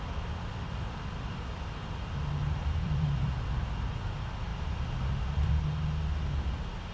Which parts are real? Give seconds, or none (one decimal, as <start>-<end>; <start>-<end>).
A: 0.0-2.4; 3.7-4.5; 5.5-6.9